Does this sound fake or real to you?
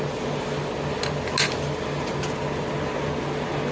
real